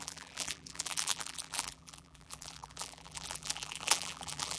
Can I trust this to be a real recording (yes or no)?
no